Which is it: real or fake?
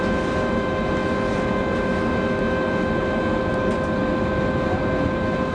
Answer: real